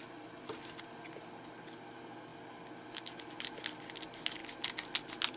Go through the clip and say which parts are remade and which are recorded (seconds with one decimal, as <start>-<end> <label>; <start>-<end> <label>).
0.0-5.4 recorded